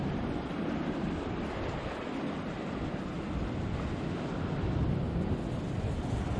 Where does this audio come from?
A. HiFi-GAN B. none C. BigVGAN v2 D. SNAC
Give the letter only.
B